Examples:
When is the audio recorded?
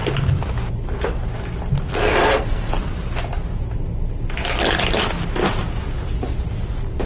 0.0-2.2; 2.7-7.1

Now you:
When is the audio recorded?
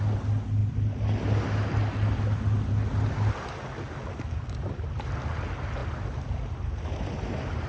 0.0-7.7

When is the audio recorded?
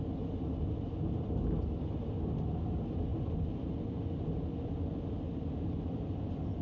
0.0-6.6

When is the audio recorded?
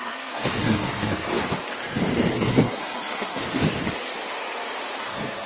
1.3-2.3; 3.4-5.0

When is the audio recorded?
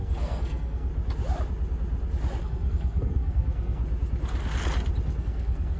0.9-2.4; 3.8-5.2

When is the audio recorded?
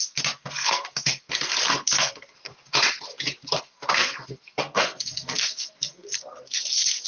2.5-3.6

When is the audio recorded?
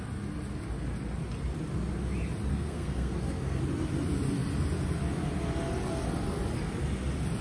0.0-2.5; 3.6-7.4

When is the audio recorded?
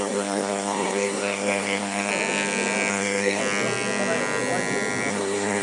2.1-2.9; 3.4-5.1